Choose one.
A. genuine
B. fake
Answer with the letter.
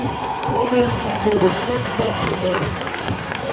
B